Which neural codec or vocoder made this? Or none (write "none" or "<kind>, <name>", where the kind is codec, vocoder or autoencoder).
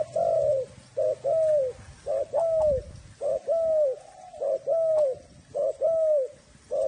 none